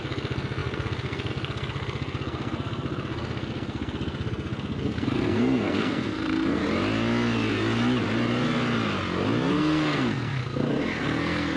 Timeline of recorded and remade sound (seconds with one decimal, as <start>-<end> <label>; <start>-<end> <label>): 0.0-6.6 remade; 6.6-9.5 recorded; 9.5-11.6 remade